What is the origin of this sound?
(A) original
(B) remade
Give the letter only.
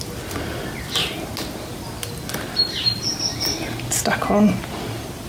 A